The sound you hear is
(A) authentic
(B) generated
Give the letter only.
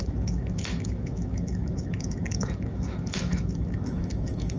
B